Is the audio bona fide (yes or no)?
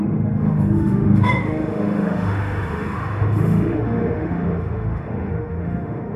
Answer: no